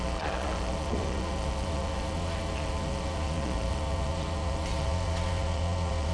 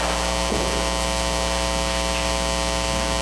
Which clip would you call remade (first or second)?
first